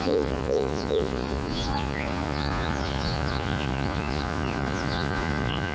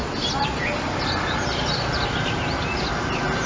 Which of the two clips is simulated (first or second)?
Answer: first